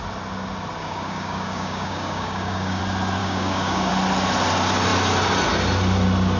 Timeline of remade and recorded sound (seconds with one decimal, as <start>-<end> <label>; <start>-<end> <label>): 0.0-0.8 recorded; 0.8-2.8 remade; 2.8-3.2 recorded; 3.2-3.9 remade; 3.9-6.4 recorded